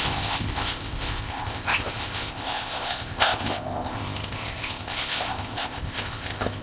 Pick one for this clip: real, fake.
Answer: fake